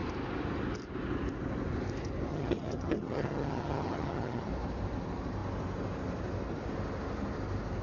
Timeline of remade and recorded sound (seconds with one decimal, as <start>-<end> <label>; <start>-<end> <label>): 0.0-2.3 recorded; 2.3-4.5 remade; 4.5-7.8 recorded

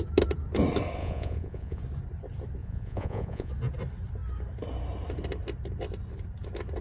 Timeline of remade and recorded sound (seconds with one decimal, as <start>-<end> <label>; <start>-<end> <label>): 0.0-1.0 recorded; 1.0-1.8 remade; 1.8-2.6 recorded; 2.6-3.5 remade; 3.5-6.8 recorded